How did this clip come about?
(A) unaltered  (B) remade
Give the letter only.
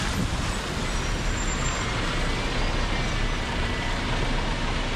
A